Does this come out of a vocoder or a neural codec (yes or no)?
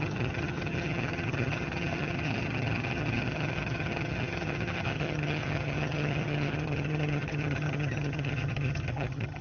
yes